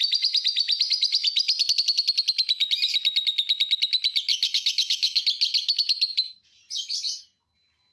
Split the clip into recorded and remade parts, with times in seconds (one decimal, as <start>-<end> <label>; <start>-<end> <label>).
0.0-4.3 recorded; 4.3-5.2 remade; 5.2-7.9 recorded